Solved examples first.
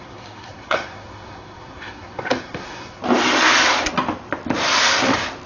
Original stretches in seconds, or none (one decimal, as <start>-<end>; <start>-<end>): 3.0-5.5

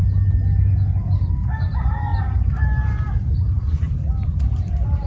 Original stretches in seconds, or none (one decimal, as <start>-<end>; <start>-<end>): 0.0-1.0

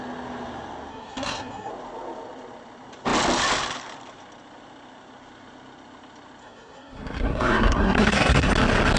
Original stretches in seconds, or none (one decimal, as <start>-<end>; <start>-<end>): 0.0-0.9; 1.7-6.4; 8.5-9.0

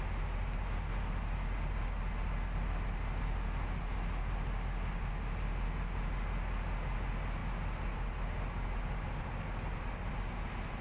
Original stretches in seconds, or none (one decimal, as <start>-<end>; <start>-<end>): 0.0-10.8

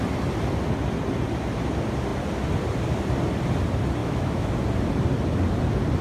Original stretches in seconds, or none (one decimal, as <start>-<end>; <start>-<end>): 0.0-4.0; 4.5-6.0